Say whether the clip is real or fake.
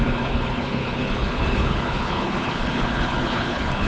fake